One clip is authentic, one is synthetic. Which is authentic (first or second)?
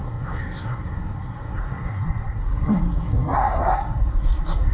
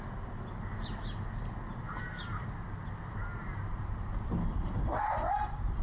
second